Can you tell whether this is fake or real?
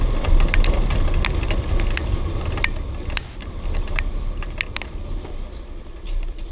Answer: real